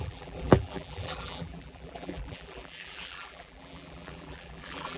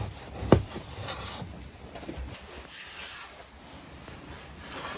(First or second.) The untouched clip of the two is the second